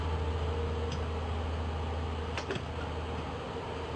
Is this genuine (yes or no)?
yes